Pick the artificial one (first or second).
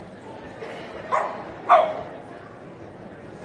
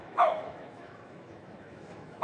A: second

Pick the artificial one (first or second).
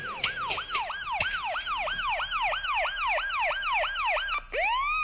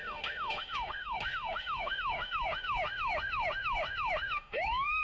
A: second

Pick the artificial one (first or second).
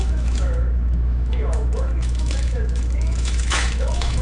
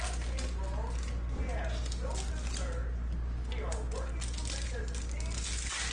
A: first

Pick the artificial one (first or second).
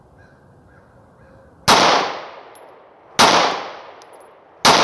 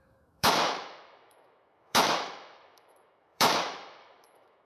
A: second